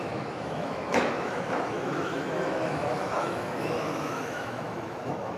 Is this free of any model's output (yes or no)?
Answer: no